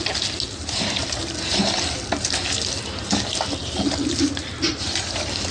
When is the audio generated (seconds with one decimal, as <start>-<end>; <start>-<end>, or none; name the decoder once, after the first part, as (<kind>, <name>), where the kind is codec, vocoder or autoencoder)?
none